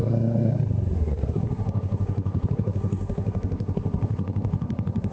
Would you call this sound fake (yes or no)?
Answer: yes